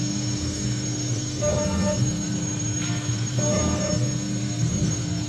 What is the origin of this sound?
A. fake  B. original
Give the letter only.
A